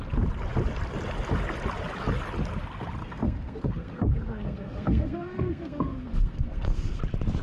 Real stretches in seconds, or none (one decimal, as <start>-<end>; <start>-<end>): 0.0-3.0; 7.0-7.4